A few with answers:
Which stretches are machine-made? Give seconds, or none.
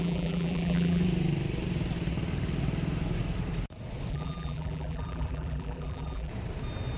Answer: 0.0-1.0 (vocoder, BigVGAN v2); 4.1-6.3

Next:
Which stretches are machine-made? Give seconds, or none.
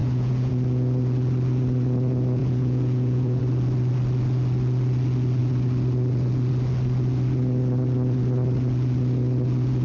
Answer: 0.0-0.5 (vocoder, Vocos); 2.4-3.4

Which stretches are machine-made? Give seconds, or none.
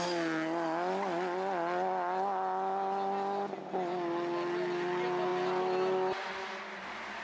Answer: none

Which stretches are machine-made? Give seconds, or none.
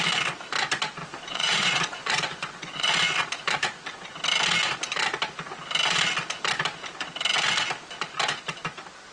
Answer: 1.0-2.9 (vocoder, Vocos)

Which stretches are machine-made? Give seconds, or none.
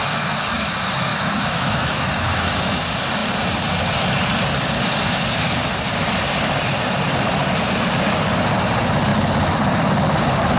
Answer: 1.1-2.8 (autoencoder, DAC-VAE)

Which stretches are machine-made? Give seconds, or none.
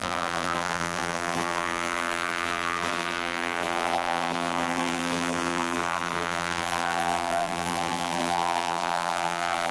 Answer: 0.0-9.7 (vocoder, BigVGAN v2)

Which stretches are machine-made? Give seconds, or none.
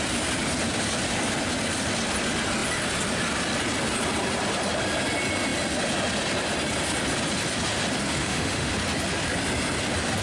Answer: 8.2-8.7 (autoencoder, DAC-VAE)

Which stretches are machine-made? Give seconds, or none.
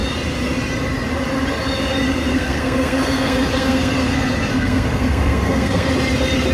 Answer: 2.3-5.9 (codec, SNAC)